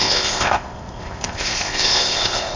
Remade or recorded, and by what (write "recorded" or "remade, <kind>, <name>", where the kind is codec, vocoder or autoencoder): remade, codec, ZipCodec